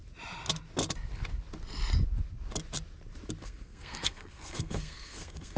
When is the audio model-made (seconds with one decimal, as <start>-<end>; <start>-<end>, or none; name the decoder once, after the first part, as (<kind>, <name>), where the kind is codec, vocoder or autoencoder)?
3.4-5.6 (codec, SNAC)